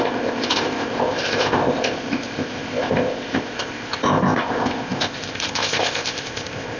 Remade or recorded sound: remade